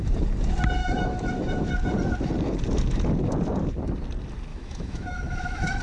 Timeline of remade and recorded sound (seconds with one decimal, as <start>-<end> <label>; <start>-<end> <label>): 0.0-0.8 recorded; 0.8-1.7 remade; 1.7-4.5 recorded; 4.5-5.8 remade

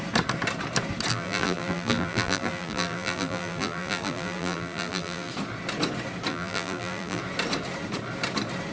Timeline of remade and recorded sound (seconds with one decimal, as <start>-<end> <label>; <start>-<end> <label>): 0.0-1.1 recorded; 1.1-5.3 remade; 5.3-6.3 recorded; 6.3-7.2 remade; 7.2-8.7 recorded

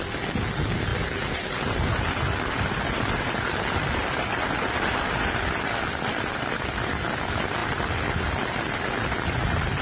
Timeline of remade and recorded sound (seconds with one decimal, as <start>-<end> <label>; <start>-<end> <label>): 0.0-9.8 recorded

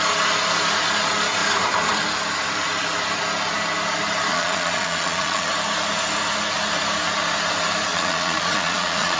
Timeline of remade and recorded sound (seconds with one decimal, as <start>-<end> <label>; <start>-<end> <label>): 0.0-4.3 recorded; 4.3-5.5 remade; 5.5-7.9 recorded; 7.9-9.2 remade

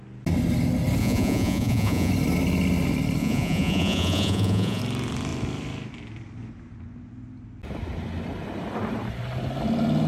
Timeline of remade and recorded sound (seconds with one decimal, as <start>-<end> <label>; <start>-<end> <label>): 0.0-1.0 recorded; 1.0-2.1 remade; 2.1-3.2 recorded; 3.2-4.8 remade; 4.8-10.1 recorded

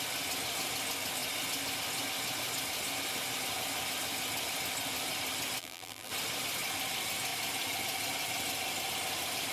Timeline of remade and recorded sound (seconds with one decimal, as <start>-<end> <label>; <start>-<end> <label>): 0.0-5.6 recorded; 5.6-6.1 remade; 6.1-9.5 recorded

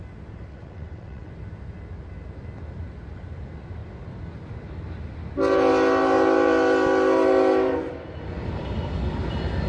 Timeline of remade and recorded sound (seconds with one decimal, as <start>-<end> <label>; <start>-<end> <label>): 0.0-0.5 recorded; 0.5-1.3 remade; 1.3-9.7 recorded

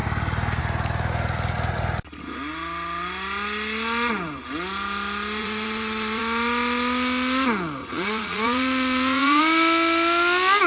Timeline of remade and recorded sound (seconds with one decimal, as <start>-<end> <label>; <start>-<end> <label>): 0.0-5.4 recorded; 5.4-6.2 remade; 6.2-7.8 recorded; 7.8-9.4 remade; 9.4-10.7 recorded